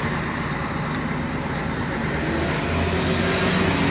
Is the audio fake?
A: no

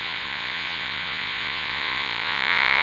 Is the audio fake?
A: yes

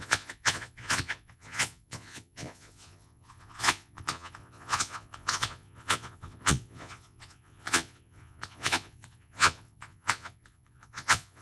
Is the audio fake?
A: yes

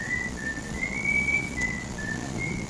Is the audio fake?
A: yes